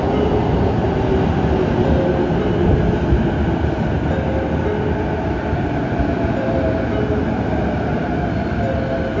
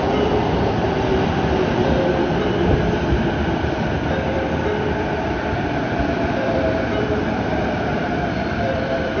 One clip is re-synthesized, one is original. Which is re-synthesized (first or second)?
second